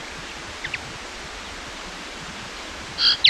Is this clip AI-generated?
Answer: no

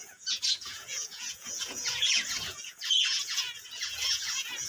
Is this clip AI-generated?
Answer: yes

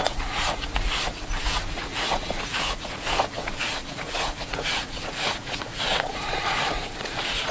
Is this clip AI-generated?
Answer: yes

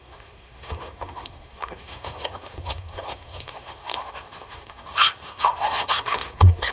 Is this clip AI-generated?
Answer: yes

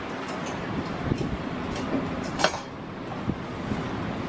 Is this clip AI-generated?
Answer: no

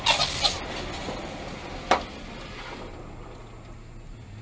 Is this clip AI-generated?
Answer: no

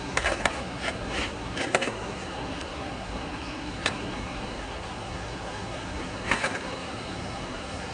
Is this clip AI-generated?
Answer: yes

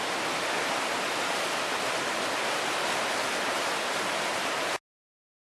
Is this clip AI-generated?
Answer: no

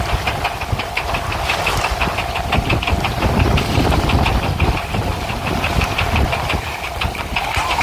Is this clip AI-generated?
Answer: no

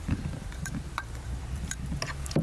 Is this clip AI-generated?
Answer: yes